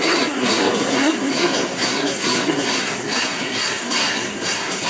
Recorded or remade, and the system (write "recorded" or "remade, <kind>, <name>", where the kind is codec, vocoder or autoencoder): remade, codec, SNAC